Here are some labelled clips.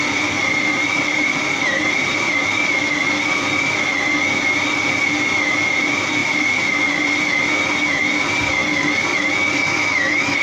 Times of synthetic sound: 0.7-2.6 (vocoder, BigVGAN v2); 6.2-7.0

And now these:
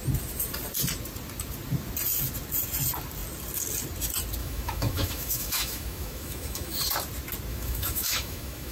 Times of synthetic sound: 4.4-6.8 (autoencoder, DAC-VAE); 7.5-8.7